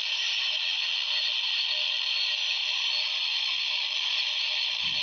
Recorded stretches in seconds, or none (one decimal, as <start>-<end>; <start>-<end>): 0.0-5.0

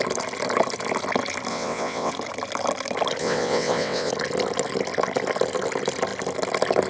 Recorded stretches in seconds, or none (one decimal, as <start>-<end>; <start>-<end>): 0.0-1.5; 2.1-3.2; 4.1-6.9

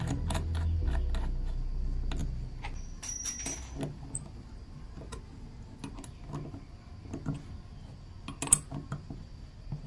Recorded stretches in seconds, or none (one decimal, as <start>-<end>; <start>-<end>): 0.0-9.9

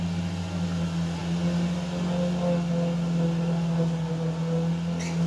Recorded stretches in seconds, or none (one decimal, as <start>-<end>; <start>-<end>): 0.0-5.3